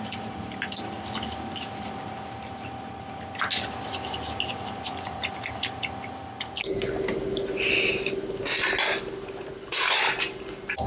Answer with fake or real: real